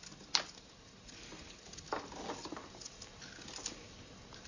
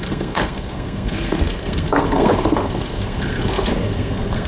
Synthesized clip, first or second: second